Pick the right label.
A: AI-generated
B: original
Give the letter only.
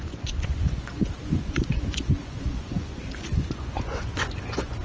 A